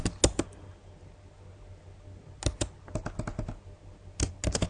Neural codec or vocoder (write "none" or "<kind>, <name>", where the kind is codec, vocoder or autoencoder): none